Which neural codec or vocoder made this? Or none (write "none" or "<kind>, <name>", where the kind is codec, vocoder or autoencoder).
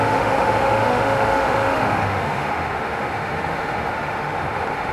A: autoencoder, DAC-VAE